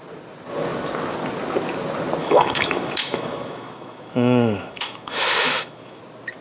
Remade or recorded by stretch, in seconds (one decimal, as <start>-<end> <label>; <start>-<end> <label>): 0.0-2.2 recorded; 2.2-6.0 remade; 6.0-6.4 recorded